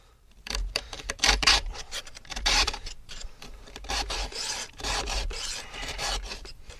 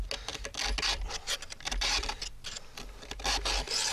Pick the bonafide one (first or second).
second